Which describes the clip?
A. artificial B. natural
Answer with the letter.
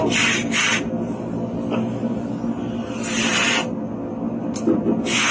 B